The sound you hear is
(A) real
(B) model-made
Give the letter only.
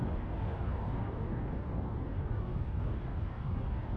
B